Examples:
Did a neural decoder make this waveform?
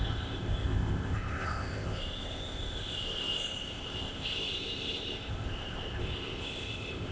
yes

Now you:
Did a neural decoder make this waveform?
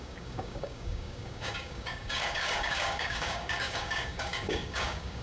yes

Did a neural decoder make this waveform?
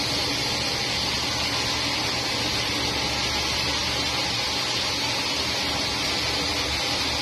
no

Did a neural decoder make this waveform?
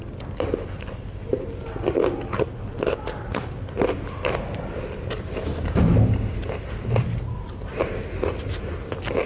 no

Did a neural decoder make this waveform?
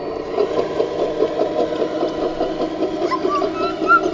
no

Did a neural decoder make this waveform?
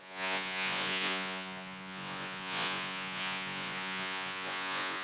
yes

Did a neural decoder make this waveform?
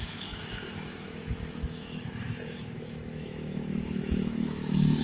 yes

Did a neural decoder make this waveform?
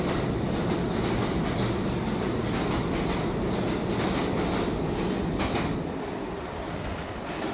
no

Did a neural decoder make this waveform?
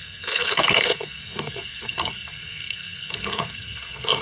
yes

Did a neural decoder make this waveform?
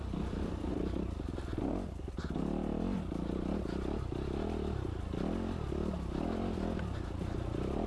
no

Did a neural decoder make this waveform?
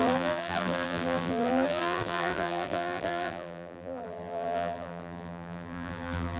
yes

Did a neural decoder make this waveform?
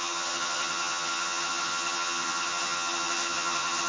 yes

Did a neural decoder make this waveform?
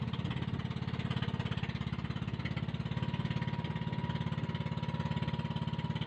no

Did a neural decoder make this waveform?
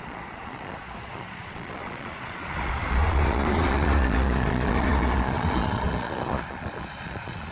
yes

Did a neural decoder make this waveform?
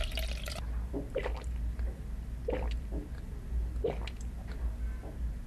no